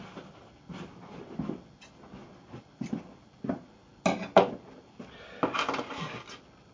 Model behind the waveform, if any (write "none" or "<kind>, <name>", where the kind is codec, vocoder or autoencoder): none